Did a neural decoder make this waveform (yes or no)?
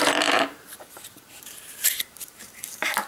yes